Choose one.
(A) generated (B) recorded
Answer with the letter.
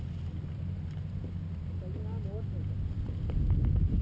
B